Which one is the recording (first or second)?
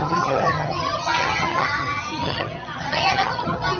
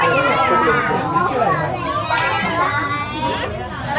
second